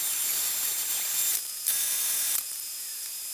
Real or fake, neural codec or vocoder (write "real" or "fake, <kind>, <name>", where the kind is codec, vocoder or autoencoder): real